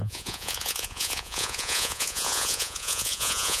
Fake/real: fake